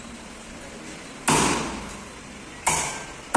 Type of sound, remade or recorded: recorded